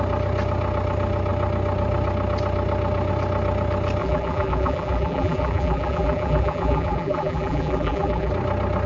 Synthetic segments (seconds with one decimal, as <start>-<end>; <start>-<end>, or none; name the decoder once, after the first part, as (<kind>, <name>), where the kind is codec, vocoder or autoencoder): 4.0-8.3 (vocoder, BigVGAN v2)